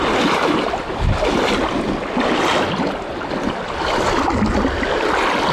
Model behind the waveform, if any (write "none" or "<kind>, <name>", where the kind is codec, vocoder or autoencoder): none